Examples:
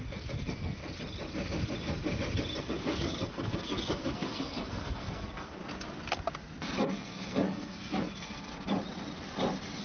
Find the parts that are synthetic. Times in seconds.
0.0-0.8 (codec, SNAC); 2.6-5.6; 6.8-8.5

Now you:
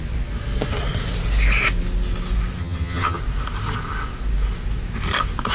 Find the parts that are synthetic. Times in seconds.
2.6-3.2 (vocoder, HiFi-GAN)

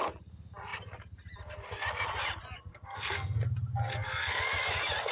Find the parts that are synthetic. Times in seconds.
2.7-3.4 (codec, SNAC); 3.9-4.4